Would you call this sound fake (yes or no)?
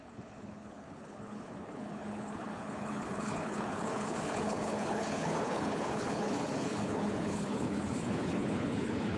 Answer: yes